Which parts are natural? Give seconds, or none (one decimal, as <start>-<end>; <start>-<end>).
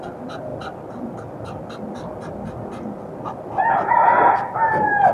0.0-5.1